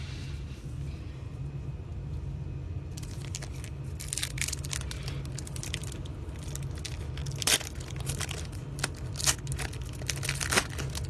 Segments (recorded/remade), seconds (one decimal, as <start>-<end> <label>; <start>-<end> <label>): 0.0-11.1 recorded